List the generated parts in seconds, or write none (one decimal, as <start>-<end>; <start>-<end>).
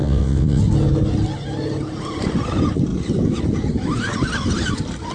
0.0-0.6